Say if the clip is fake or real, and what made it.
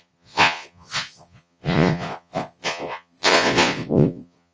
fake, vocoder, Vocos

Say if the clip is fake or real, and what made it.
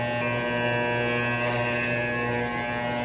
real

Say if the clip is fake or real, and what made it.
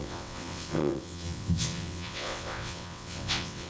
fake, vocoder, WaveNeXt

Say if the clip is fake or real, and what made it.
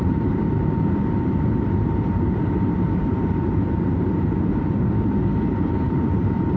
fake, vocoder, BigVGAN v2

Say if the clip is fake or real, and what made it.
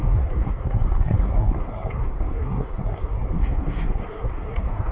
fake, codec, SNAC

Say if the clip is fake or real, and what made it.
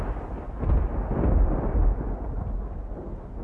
real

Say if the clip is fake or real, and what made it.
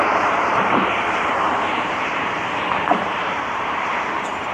fake, vocoder, BigVGAN v2